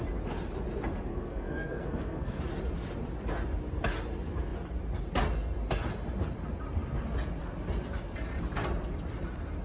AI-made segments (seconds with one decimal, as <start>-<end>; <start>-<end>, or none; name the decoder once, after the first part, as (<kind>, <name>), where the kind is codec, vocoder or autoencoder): 1.1-2.4 (codec, SNAC)